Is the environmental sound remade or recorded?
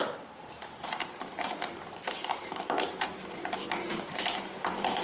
remade